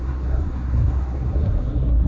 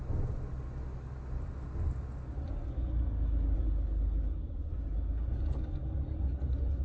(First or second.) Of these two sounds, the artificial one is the first